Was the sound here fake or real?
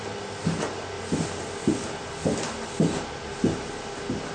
real